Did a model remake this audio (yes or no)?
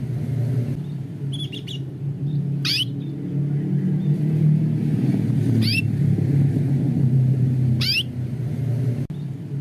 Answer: no